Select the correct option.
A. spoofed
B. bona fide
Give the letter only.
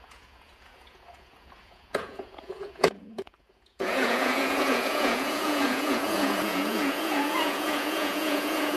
A